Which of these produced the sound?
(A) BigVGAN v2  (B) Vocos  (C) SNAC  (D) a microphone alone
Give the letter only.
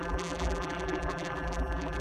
A